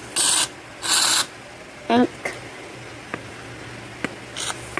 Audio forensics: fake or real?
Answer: real